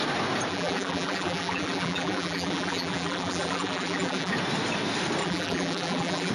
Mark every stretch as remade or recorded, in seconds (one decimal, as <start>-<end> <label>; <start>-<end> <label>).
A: 0.0-0.5 recorded; 0.5-4.3 remade; 4.3-5.2 recorded; 5.2-6.3 remade